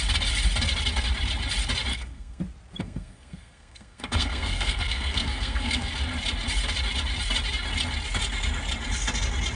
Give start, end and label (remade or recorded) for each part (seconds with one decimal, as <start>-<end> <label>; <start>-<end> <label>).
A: 0.0-1.9 recorded; 1.9-2.4 remade; 2.4-2.8 recorded; 2.8-5.9 remade; 5.9-9.6 recorded